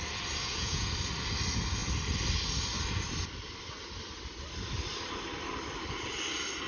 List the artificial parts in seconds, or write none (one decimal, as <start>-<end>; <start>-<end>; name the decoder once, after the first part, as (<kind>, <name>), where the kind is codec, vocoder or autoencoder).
0.4-0.9 (vocoder, Vocos)